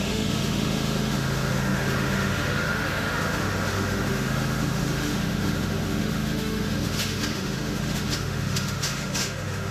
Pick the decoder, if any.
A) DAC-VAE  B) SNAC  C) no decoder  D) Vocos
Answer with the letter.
A